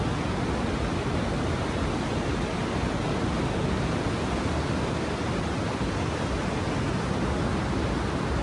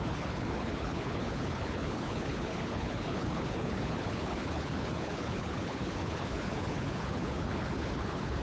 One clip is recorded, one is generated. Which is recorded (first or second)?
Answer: first